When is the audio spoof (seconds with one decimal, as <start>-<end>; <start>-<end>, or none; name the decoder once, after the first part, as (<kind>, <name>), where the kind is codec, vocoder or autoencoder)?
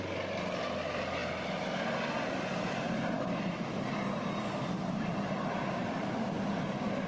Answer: none